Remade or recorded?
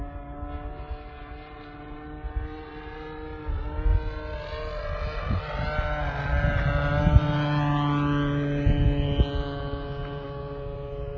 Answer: recorded